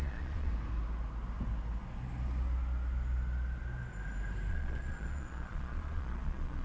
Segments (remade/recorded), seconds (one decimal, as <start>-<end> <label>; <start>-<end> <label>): 0.0-0.5 remade; 0.5-4.5 recorded; 4.5-6.6 remade